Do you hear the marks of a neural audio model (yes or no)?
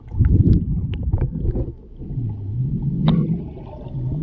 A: no